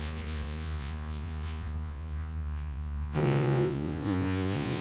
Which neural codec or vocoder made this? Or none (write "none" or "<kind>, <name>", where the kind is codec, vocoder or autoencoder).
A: vocoder, Vocos